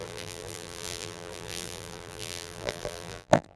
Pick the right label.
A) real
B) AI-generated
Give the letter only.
B